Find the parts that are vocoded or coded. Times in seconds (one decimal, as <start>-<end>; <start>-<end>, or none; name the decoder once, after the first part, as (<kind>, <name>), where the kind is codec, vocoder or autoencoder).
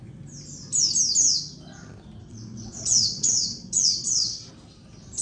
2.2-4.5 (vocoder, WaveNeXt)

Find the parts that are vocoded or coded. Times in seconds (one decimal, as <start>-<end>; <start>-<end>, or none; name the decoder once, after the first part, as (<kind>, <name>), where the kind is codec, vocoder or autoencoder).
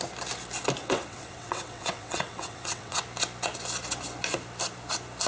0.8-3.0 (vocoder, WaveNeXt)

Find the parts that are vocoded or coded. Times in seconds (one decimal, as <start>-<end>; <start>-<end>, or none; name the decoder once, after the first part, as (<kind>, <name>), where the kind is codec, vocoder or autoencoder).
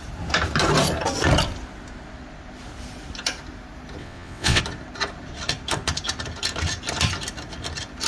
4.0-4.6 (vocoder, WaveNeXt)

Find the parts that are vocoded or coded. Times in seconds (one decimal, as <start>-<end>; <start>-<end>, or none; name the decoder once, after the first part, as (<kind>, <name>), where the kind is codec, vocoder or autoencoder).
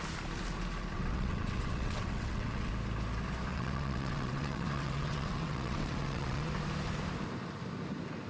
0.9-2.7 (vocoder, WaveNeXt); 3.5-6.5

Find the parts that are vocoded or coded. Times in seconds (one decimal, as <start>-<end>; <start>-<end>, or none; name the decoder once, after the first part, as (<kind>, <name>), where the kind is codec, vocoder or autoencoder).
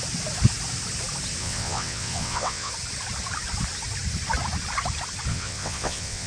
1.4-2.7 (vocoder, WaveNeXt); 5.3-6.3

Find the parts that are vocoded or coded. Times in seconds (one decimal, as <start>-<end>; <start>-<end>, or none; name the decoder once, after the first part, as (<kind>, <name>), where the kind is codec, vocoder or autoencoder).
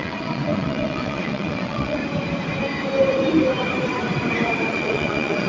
0.0-2.0 (vocoder, WaveNeXt); 4.7-5.5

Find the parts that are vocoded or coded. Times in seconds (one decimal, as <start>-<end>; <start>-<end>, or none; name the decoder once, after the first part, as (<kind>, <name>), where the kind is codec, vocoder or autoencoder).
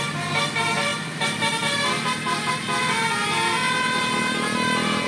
none